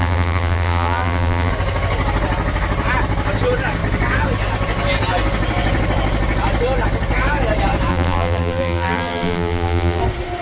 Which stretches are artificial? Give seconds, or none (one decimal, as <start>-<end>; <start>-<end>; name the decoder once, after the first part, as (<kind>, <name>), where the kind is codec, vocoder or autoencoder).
0.0-1.5 (vocoder, BigVGAN v2); 7.9-10.0